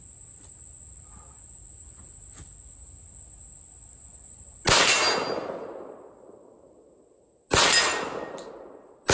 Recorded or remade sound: recorded